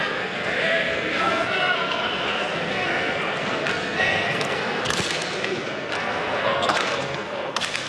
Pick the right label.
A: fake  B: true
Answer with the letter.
A